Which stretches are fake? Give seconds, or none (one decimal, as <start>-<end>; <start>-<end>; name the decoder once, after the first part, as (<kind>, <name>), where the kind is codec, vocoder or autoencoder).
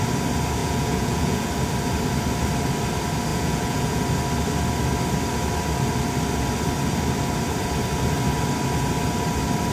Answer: 0.6-1.5 (vocoder, Vocos); 3.3-4.0